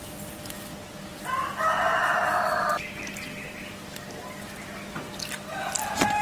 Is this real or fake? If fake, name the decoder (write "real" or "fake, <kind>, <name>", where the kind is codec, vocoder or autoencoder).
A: real